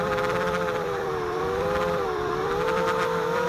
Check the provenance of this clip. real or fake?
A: fake